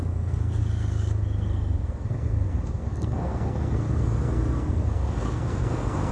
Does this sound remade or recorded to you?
remade